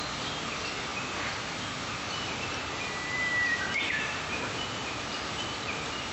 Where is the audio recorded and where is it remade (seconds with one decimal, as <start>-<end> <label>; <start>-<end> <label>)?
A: 0.0-6.1 recorded